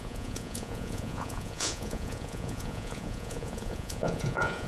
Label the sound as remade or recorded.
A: remade